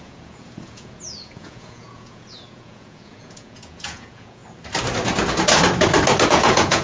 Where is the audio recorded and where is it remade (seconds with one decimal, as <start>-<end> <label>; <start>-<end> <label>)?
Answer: 0.0-4.4 remade; 4.4-6.3 recorded; 6.3-6.8 remade